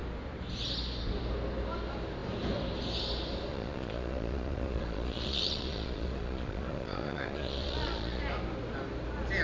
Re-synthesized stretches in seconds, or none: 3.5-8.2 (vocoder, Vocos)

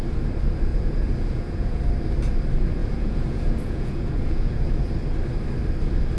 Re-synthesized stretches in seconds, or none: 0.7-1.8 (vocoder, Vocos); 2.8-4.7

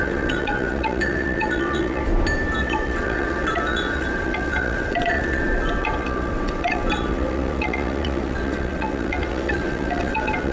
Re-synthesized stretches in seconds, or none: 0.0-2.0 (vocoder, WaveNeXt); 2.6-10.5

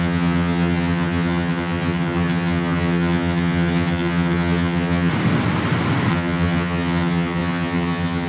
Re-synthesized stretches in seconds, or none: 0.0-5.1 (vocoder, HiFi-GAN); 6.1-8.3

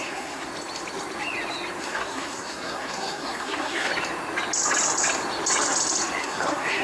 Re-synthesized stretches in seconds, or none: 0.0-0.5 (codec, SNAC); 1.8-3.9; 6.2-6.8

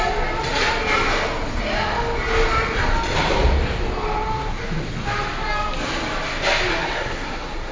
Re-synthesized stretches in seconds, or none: 6.7-7.7 (codec, SNAC)

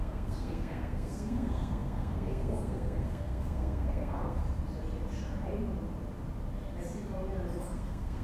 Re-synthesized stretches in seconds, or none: 0.0-4.4 (codec, SNAC); 7.6-8.2

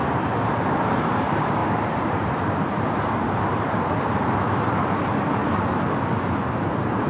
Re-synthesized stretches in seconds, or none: 0.6-5.4 (vocoder, BigVGAN v2); 6.5-7.1